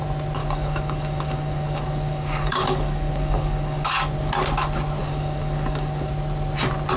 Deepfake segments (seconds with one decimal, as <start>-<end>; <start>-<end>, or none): 0.4-3.9; 5.0-6.1